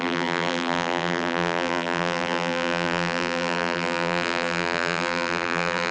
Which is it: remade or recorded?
remade